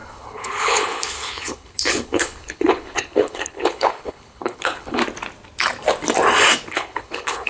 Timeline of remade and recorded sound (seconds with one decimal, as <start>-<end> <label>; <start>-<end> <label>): 0.0-5.0 remade; 5.0-6.7 recorded; 6.7-7.5 remade